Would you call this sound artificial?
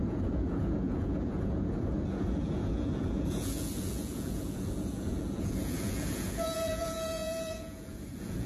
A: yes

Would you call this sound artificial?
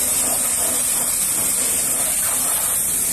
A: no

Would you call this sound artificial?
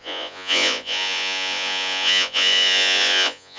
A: yes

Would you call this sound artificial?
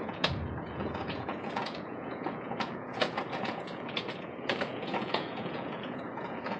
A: yes